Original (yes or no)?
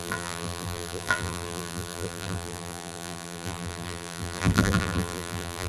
no